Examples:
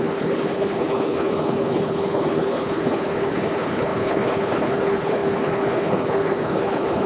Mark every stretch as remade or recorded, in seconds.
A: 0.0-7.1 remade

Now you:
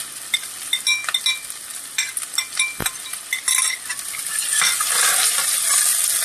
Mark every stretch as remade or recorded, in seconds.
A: 0.0-6.2 recorded

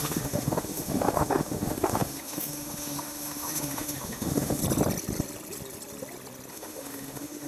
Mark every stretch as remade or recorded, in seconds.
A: 0.0-4.6 remade; 4.6-6.5 recorded; 6.5-7.5 remade

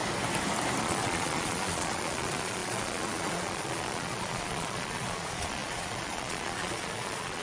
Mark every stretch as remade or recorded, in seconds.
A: 0.0-0.8 recorded; 0.8-7.4 remade

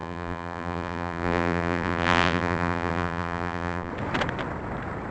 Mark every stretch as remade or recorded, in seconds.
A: 0.0-3.9 remade; 3.9-5.1 recorded

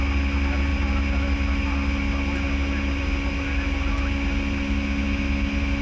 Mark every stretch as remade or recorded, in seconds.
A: 0.0-5.8 recorded

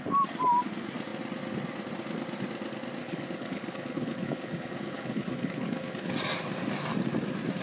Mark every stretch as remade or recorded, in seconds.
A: 0.0-3.0 recorded; 3.0-6.1 remade; 6.1-7.6 recorded

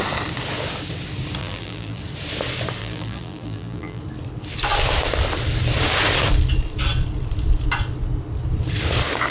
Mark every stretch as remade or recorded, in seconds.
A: 0.0-1.4 recorded; 1.4-2.0 remade; 2.0-2.8 recorded; 2.8-4.0 remade; 4.0-9.3 recorded